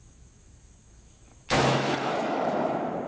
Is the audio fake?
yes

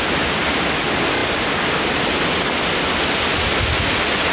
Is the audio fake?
no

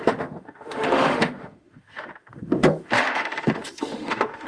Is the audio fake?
yes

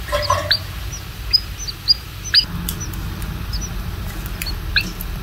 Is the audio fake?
no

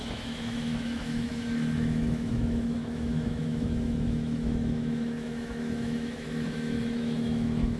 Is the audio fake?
yes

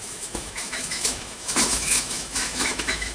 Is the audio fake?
yes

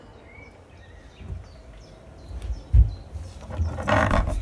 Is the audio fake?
no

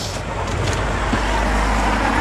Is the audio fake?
no